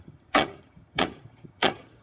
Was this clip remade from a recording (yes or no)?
yes